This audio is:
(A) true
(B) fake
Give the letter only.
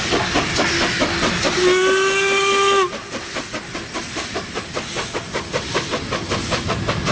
A